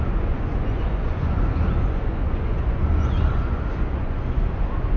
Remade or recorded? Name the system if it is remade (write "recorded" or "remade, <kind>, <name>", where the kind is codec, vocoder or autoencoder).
remade, vocoder, Vocos